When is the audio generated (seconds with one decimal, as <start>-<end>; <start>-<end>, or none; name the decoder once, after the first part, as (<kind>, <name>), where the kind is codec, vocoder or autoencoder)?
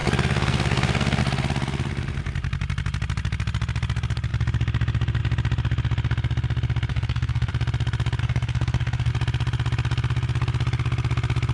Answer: 0.0-1.2 (codec, SNAC); 6.9-7.5; 8.2-9.1